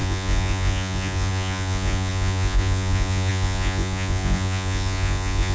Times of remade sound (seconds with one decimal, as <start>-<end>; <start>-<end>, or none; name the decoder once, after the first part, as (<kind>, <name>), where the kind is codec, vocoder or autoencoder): 0.0-5.5 (vocoder, Vocos)